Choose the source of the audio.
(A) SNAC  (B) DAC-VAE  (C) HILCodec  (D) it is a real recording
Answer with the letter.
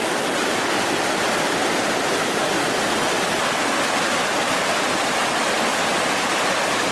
D